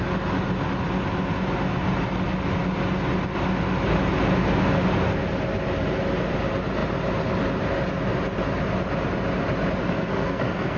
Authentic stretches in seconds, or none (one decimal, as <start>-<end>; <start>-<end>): 0.0-9.8